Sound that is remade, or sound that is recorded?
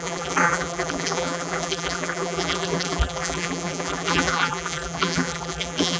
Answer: remade